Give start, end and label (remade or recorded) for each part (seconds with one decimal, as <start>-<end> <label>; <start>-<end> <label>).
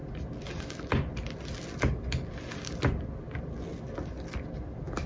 0.0-5.1 recorded